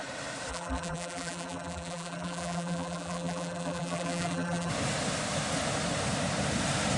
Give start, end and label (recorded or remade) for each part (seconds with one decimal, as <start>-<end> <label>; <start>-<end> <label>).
0.0-0.5 recorded; 0.5-4.7 remade; 4.7-7.0 recorded